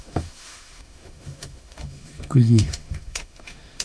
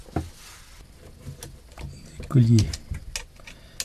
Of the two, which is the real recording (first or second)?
second